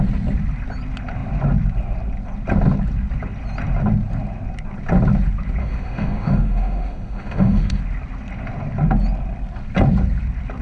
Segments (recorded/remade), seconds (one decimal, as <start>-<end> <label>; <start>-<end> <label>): 0.0-5.6 recorded; 5.6-7.8 remade; 7.8-10.6 recorded